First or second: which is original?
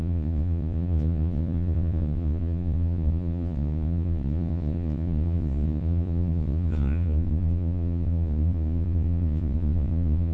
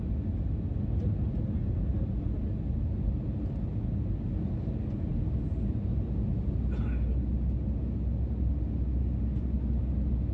second